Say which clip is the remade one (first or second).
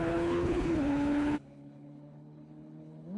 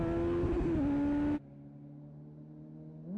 first